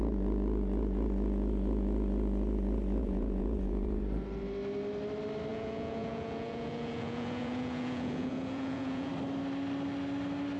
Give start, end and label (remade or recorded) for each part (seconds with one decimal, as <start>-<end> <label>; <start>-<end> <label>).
0.0-3.0 recorded; 3.0-4.0 remade; 4.0-5.5 recorded; 5.5-9.1 remade; 9.1-10.6 recorded